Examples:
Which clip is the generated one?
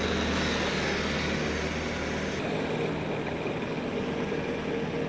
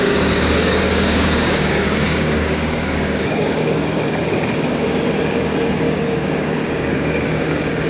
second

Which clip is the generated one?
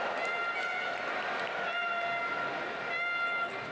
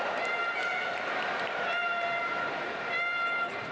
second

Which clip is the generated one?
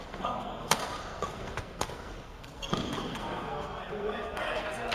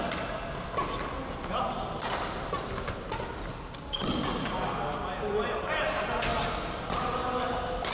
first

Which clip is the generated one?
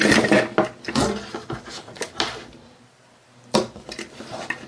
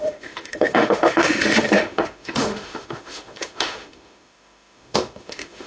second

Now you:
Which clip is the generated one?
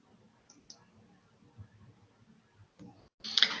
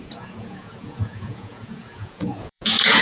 second